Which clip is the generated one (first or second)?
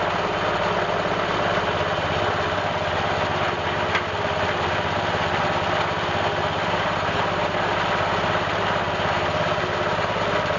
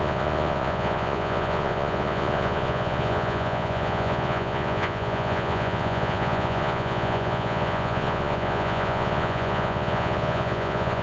second